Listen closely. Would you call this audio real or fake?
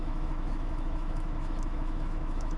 fake